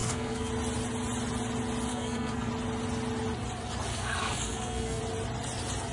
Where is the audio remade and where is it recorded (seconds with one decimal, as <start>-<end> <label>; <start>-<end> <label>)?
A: 0.0-0.5 remade; 0.5-1.9 recorded; 1.9-2.5 remade; 2.5-3.9 recorded; 3.9-5.0 remade; 5.0-5.9 recorded